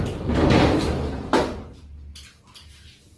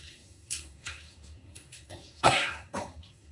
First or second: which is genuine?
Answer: first